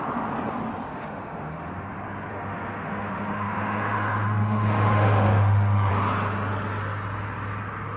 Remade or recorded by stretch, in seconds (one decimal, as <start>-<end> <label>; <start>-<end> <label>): 0.0-0.9 recorded; 0.9-1.9 remade; 1.9-2.3 recorded; 2.3-5.9 remade; 5.9-8.0 recorded